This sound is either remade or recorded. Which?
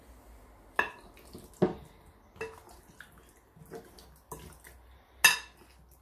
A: recorded